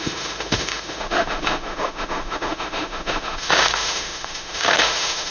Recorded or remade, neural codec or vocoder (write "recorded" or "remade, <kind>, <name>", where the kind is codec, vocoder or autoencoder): remade, autoencoder, DAC-VAE